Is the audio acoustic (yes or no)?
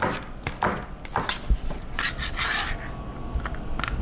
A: yes